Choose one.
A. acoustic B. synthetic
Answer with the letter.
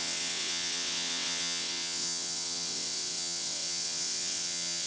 B